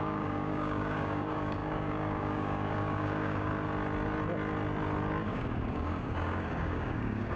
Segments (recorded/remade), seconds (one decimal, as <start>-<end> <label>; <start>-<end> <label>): 0.0-3.5 remade; 3.5-5.2 recorded; 5.2-7.4 remade